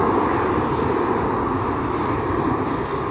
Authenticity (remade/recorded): recorded